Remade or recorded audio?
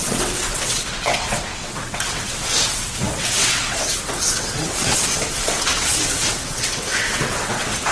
remade